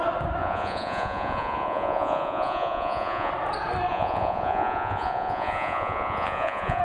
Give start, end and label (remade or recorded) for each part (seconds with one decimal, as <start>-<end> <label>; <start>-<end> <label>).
0.0-0.4 recorded; 0.4-3.3 remade; 3.3-3.9 recorded; 3.9-6.8 remade